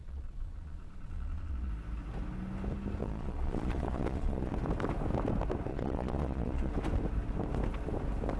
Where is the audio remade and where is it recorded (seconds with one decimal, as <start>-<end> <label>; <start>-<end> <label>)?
0.0-1.7 remade; 1.7-3.0 recorded; 3.0-4.5 remade; 4.5-5.7 recorded; 5.7-6.7 remade; 6.7-8.4 recorded